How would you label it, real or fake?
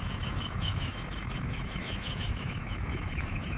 fake